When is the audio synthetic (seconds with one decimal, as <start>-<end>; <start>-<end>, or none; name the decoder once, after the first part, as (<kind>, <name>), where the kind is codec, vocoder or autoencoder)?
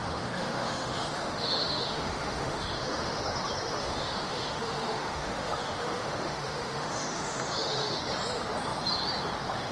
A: 0.0-3.2 (autoencoder, DAC-VAE); 3.8-8.0